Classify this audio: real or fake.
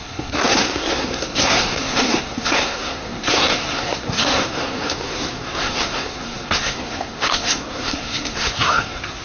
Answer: fake